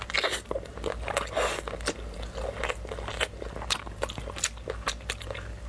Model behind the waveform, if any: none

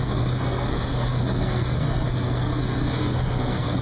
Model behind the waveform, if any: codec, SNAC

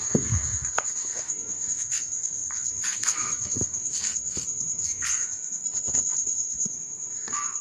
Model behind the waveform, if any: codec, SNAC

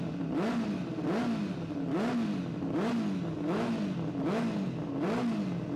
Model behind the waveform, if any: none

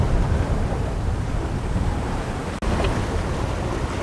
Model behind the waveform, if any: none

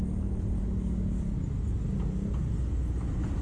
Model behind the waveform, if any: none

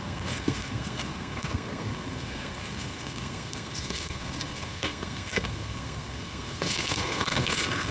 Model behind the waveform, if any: codec, SNAC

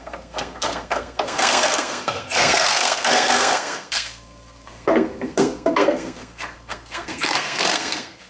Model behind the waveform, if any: codec, SNAC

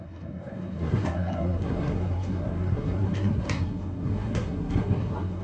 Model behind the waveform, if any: codec, SNAC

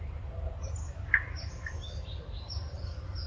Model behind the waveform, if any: none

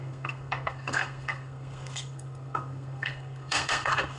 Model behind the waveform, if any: codec, SNAC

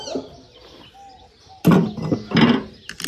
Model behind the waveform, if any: none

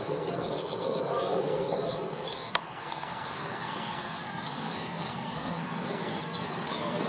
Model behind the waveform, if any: codec, SNAC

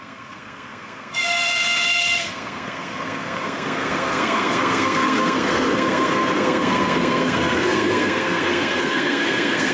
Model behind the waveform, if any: codec, SNAC